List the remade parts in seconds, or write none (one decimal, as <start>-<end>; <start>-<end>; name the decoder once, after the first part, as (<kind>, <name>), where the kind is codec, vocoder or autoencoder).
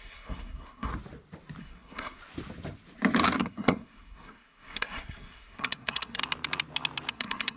0.0-0.9 (codec, SNAC); 1.6-2.2; 3.4-6.2; 7.1-7.6